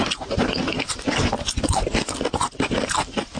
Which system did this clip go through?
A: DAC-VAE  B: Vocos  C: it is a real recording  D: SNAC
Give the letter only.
C